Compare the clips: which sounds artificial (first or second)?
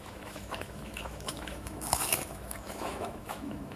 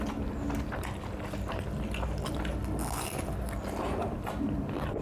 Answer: first